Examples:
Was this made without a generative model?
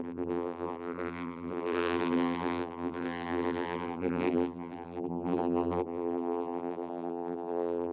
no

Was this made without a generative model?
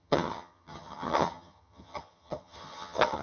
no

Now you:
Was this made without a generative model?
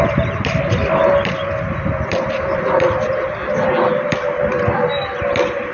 yes